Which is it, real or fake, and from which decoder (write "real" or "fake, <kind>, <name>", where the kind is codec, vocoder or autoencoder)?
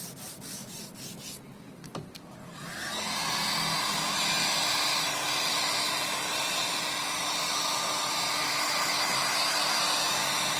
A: real